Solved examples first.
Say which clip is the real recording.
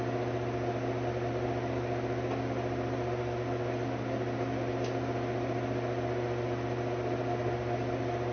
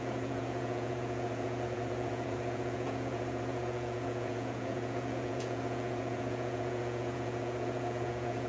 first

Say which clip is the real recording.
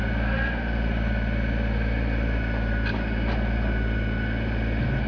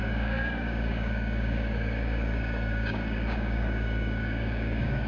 first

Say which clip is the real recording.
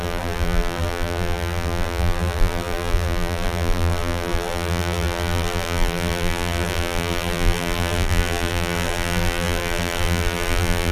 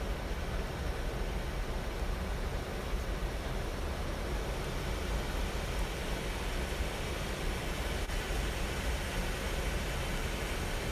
second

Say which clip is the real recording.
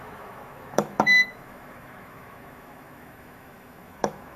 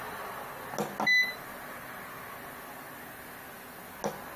second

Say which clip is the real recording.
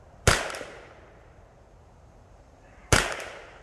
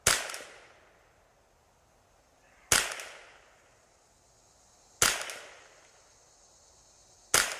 second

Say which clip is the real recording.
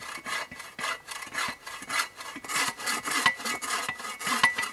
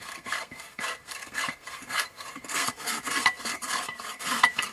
first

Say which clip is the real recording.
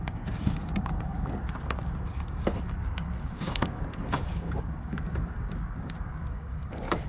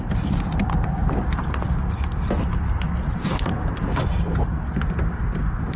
second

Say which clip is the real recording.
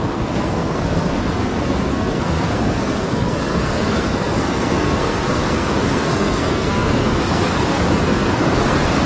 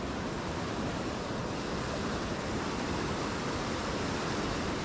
second